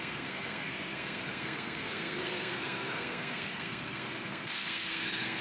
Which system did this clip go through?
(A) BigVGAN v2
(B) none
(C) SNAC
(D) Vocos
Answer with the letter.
C